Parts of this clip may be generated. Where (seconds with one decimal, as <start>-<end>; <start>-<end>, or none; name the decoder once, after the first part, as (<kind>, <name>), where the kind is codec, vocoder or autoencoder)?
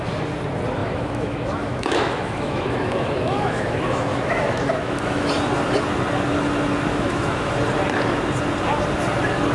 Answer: 0.8-5.3 (autoencoder, DAC-VAE); 6.9-7.5